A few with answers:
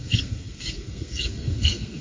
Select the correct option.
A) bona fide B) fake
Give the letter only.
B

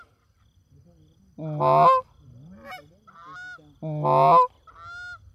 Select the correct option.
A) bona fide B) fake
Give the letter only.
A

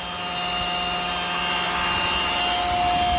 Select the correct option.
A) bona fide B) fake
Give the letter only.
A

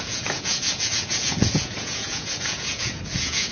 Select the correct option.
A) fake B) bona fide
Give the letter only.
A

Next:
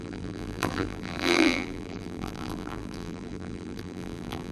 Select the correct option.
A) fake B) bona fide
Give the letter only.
A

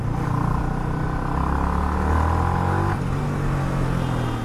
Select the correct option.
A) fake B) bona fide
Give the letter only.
B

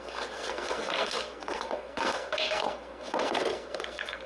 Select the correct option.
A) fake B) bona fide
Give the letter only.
A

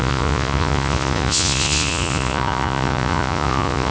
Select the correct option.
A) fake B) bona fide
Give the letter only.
A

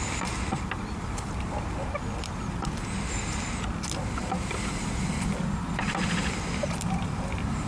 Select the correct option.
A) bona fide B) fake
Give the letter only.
A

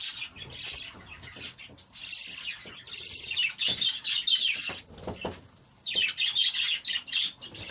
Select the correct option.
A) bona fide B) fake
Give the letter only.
A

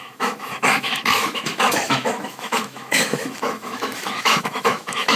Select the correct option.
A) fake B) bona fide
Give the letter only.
A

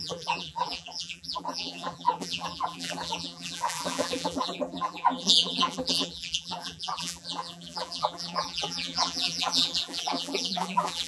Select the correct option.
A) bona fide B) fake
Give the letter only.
B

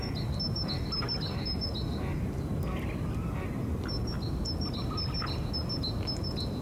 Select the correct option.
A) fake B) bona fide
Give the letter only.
B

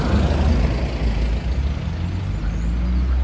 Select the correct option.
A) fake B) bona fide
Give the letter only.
B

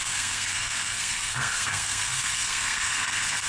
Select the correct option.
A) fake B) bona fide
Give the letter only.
A